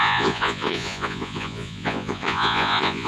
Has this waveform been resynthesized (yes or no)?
yes